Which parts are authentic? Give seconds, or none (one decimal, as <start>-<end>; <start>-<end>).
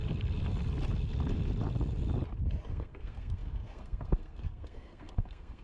0.0-2.7